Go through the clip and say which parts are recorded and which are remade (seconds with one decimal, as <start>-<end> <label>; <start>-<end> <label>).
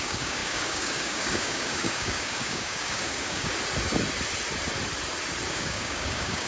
0.0-3.5 remade; 3.5-5.5 recorded; 5.5-6.5 remade